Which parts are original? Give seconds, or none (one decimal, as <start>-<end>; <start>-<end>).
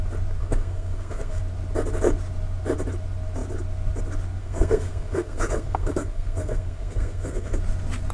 0.0-0.4; 1.4-4.4; 7.6-8.1